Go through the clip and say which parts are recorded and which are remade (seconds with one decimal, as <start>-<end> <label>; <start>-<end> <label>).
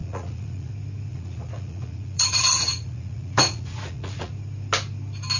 0.0-0.7 remade; 0.7-1.1 recorded; 1.1-4.3 remade; 4.3-5.4 recorded